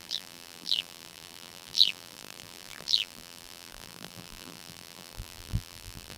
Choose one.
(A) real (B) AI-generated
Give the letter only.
B